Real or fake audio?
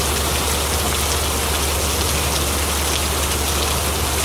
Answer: real